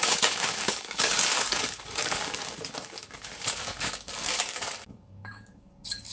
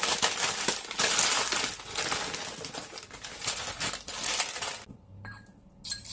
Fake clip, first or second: first